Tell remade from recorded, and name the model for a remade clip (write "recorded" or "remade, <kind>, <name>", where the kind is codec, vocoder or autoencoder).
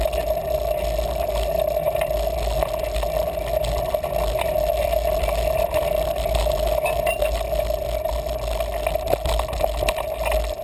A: recorded